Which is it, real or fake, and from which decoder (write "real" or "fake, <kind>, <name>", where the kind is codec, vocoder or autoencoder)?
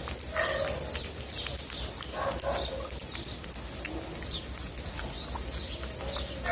real